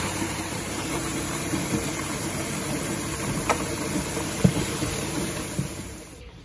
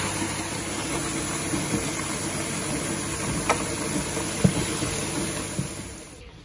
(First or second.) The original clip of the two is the second